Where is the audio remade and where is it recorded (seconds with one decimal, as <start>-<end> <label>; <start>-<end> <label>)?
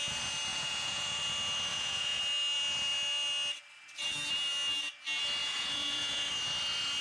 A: 0.0-0.5 recorded; 0.5-1.2 remade; 1.2-1.7 recorded; 1.7-2.2 remade; 2.2-5.4 recorded; 5.4-6.3 remade; 6.3-7.0 recorded